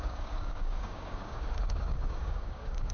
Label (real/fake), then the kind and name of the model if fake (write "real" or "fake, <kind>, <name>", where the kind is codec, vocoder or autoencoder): fake, codec, DAC